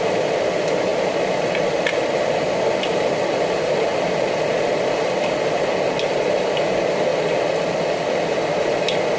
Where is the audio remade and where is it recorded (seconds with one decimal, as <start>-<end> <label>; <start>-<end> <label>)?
0.0-0.9 recorded; 0.9-1.5 remade; 1.5-9.2 recorded

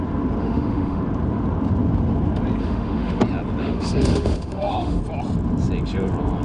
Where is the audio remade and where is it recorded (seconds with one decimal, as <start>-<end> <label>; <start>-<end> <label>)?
0.0-0.4 recorded; 0.4-1.0 remade; 1.0-2.6 recorded; 2.6-3.2 remade; 3.2-3.6 recorded; 3.6-5.0 remade; 5.0-6.4 recorded

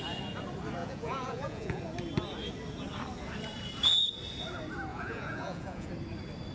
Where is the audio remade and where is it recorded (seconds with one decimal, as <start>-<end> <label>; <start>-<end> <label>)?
0.0-0.8 recorded; 0.8-1.8 remade; 1.8-4.9 recorded; 4.9-5.9 remade; 5.9-6.5 recorded

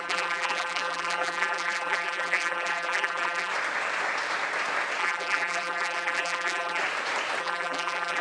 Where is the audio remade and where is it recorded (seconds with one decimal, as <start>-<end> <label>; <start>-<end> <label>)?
0.0-3.5 remade; 3.5-5.0 recorded; 5.0-6.8 remade; 6.8-7.4 recorded; 7.4-8.2 remade

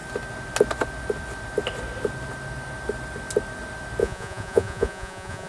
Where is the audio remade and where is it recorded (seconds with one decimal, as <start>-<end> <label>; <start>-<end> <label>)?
0.0-4.0 recorded; 4.0-5.5 remade

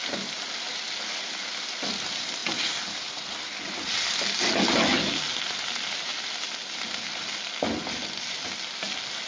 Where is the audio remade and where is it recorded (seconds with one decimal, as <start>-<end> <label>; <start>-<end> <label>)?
0.0-9.3 recorded

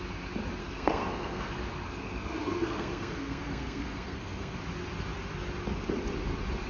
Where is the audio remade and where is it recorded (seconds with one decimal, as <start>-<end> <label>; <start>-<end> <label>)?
0.0-0.6 recorded; 0.6-4.6 remade; 4.6-6.7 recorded

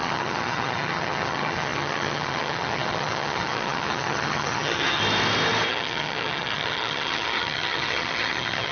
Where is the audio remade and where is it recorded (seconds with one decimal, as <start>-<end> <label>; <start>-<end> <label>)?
0.0-5.0 remade; 5.0-5.7 recorded; 5.7-8.7 remade